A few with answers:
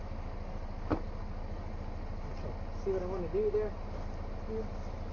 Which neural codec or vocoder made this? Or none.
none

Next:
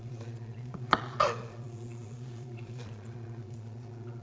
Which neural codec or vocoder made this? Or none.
vocoder, Vocos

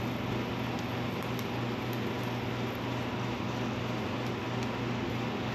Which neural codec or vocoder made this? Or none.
none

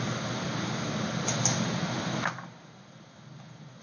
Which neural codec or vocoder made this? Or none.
none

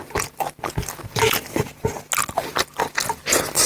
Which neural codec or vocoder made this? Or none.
none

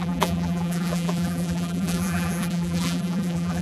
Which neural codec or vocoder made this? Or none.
vocoder, BigVGAN v2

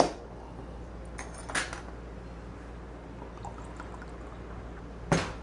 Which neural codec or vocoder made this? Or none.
none